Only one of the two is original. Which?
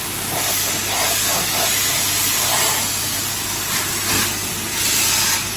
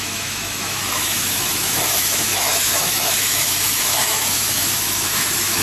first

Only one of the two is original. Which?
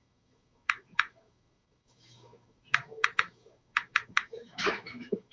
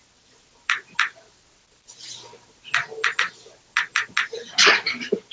second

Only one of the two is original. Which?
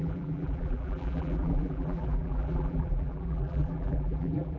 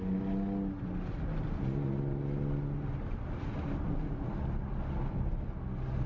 second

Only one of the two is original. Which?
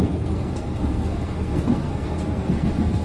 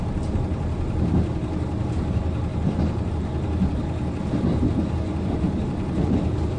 second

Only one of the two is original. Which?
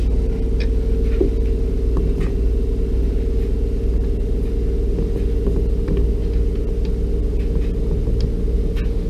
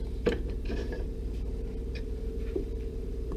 first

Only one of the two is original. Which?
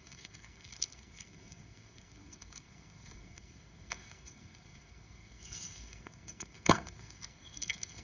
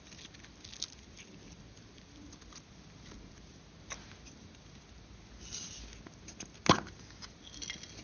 second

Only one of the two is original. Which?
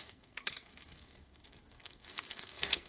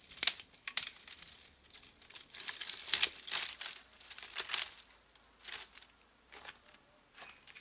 second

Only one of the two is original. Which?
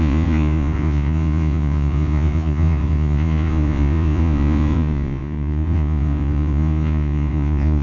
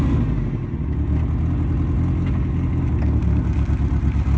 second